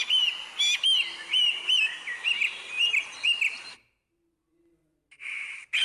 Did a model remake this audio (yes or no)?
no